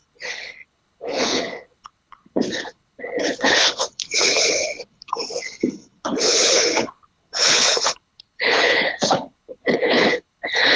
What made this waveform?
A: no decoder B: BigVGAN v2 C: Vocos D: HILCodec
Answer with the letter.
D